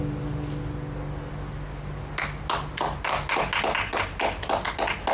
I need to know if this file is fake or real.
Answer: real